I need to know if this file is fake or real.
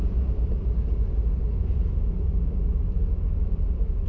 real